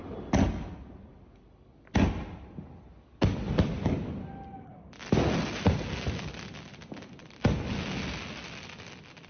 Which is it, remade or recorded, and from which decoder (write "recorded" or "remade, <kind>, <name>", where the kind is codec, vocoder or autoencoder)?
recorded